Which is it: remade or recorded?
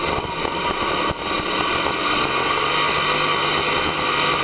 recorded